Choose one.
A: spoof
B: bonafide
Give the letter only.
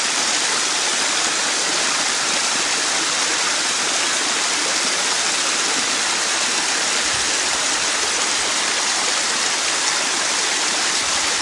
B